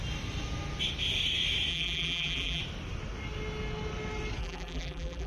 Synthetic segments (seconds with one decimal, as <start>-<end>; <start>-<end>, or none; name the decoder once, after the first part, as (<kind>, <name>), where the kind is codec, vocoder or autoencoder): 1.7-2.6 (vocoder, BigVGAN v2); 4.4-5.3

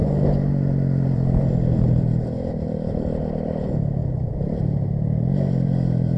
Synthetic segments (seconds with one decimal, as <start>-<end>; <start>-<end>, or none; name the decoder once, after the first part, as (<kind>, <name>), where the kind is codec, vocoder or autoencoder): 0.0-3.6 (vocoder, BigVGAN v2); 4.0-6.2

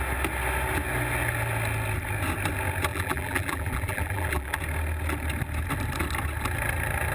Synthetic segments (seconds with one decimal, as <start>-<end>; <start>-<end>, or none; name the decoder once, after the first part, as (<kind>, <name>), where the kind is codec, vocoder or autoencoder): 2.9-4.6 (vocoder, BigVGAN v2)

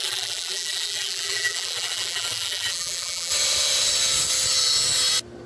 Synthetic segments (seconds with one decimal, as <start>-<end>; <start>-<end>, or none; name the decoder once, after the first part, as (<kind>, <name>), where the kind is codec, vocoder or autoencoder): 0.0-3.3 (vocoder, BigVGAN v2)

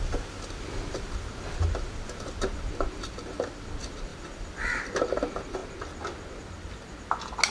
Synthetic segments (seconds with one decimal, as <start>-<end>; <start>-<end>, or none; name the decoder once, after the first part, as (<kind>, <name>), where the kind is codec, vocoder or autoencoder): 4.1-4.8 (vocoder, BigVGAN v2)

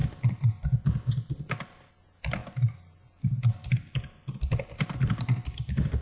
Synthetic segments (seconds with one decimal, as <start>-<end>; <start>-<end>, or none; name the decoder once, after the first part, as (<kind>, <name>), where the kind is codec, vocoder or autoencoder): 2.4-6.0 (vocoder, BigVGAN v2)